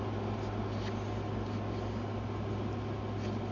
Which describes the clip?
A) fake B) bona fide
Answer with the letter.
B